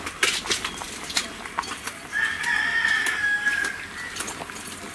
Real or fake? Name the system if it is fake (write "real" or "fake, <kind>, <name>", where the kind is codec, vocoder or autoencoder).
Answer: real